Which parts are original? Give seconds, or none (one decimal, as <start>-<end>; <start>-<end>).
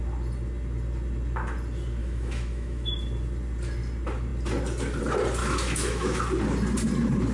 0.0-2.0; 2.9-5.4; 6.2-7.3